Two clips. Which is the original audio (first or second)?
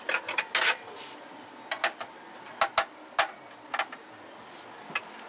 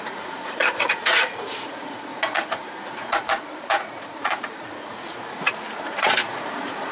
first